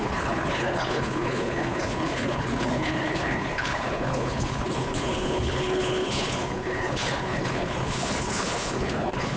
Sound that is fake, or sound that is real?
fake